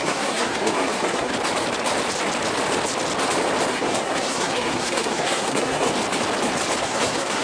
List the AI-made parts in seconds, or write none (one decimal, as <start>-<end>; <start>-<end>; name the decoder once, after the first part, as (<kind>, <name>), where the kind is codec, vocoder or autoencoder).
0.0-1.3 (codec, SNAC); 3.7-5.9; 6.8-7.4